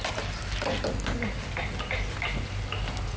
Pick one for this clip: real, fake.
real